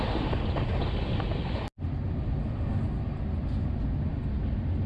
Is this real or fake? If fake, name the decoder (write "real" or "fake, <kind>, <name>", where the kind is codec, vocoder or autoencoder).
real